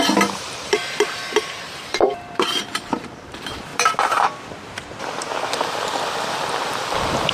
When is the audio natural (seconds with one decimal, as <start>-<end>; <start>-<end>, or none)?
0.8-1.8; 3.7-6.3